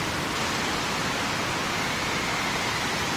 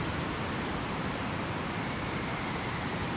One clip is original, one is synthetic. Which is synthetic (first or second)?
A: second